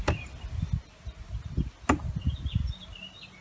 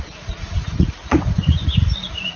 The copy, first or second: second